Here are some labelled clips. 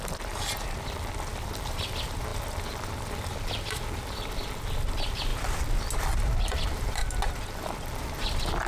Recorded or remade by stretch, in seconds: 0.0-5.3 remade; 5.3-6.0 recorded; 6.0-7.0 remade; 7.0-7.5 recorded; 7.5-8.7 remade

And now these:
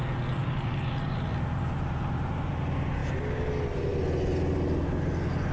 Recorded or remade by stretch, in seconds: 0.0-0.4 recorded; 0.4-2.5 remade; 2.5-5.5 recorded

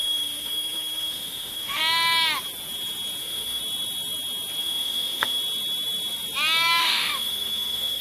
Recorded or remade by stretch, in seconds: 0.0-1.8 remade; 1.8-3.2 recorded; 3.2-3.6 remade; 3.6-4.6 recorded; 4.6-5.4 remade; 5.4-6.8 recorded; 6.8-8.0 remade

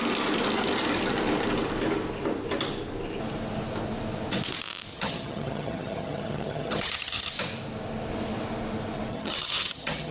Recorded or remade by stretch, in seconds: 0.0-4.9 recorded; 4.9-7.3 remade; 7.3-9.1 recorded; 9.1-10.1 remade